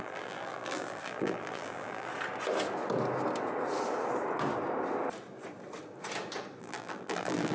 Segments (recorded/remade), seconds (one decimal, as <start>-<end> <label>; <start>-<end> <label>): 0.0-2.1 remade; 2.1-6.6 recorded; 6.6-7.5 remade

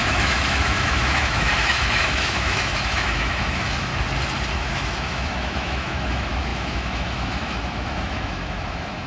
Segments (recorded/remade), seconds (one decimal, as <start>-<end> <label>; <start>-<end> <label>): 0.0-3.9 remade; 3.9-4.5 recorded; 4.5-9.1 remade

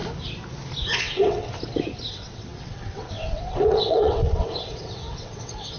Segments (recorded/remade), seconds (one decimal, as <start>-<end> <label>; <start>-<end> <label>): 0.0-1.0 recorded; 1.0-1.5 remade; 1.5-2.1 recorded; 2.1-5.8 remade

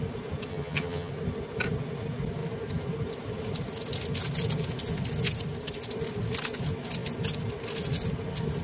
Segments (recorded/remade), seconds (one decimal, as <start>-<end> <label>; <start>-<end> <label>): 0.0-0.5 recorded; 0.5-1.1 remade; 1.1-8.6 recorded

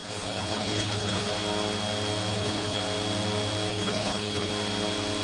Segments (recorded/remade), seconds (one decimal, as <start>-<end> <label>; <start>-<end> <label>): 0.0-1.3 remade; 1.3-2.3 recorded; 2.3-2.8 remade; 2.8-3.7 recorded; 3.7-4.5 remade; 4.5-5.2 recorded